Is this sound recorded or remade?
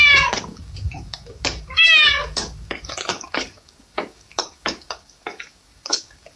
remade